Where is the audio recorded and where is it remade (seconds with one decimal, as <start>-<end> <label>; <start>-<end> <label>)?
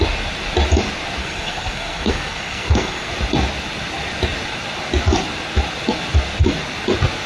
0.0-1.2 recorded; 1.2-3.1 remade; 3.1-7.3 recorded